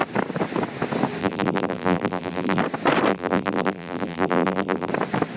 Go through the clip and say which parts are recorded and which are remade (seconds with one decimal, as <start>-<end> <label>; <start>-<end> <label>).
0.0-1.2 recorded; 1.2-2.6 remade; 2.6-3.1 recorded; 3.1-4.9 remade; 4.9-5.4 recorded